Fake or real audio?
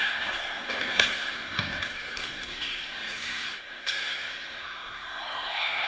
fake